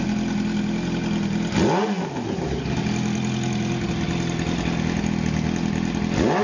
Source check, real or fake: real